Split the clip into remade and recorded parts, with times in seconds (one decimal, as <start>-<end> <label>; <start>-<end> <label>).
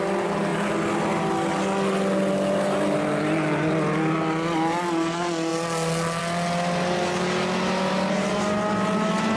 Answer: 0.0-9.4 recorded